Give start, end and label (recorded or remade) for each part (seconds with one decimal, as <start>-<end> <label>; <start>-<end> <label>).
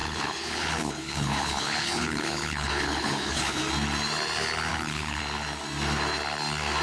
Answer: 0.0-3.6 remade; 3.6-4.7 recorded; 4.7-5.2 remade; 5.2-6.8 recorded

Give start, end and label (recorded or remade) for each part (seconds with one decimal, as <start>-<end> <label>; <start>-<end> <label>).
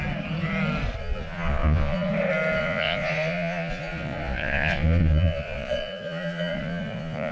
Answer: 0.0-1.0 recorded; 1.0-2.1 remade; 2.1-2.6 recorded; 2.6-7.3 remade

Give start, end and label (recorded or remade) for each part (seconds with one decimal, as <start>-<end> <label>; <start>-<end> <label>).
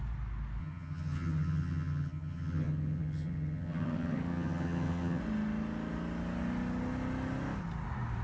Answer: 0.0-0.6 recorded; 0.6-5.2 remade; 5.2-8.2 recorded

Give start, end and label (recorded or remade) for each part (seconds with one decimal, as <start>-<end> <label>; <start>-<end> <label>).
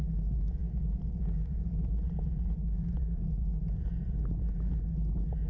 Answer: 0.0-5.5 recorded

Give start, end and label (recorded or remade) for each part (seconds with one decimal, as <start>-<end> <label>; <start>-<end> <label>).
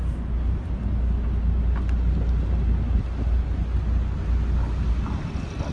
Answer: 0.0-5.7 recorded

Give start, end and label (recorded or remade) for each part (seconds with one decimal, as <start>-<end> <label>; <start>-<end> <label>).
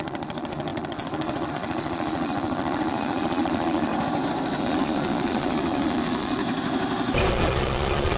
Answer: 0.0-3.9 remade; 3.9-4.6 recorded; 4.6-6.4 remade; 6.4-7.3 recorded; 7.3-8.2 remade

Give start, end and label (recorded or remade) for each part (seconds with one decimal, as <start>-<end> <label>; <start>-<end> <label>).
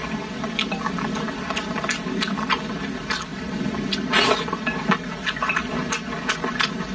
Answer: 0.0-6.9 recorded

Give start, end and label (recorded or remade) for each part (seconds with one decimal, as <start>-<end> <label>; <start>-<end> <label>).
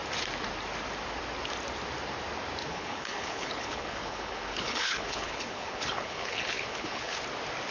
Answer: 0.0-2.6 recorded; 2.6-7.2 remade; 7.2-7.7 recorded